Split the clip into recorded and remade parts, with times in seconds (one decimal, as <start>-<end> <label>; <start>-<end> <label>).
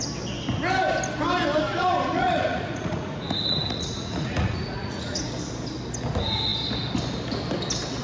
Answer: 0.0-1.7 recorded; 1.7-5.3 remade; 5.3-8.0 recorded